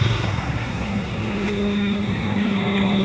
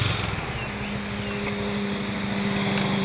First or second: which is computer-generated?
first